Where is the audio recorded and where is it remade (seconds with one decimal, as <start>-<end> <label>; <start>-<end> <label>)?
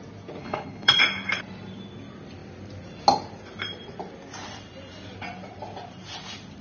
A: 0.0-0.4 recorded; 0.4-1.0 remade; 1.0-6.6 recorded